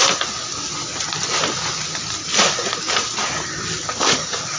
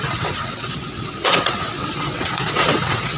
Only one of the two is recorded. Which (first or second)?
first